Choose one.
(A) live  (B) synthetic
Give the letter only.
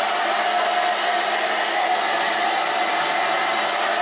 A